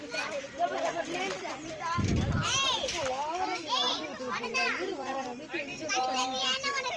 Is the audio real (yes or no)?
no